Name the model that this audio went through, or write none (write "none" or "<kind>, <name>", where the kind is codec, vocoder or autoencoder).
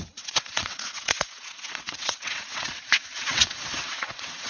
vocoder, WaveNeXt